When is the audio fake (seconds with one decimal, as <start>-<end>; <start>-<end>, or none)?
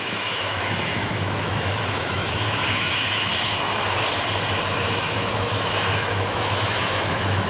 0.0-3.3; 5.0-7.5